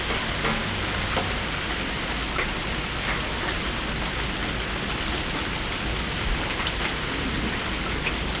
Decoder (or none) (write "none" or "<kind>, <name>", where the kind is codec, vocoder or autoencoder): none